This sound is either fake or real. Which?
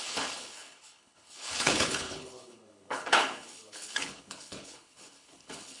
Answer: fake